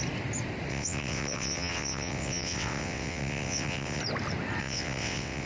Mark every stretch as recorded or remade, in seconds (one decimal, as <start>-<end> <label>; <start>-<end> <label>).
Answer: 0.0-0.7 recorded; 0.7-4.0 remade; 4.0-4.6 recorded; 4.6-5.5 remade